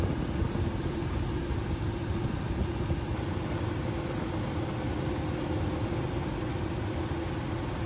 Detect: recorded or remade recorded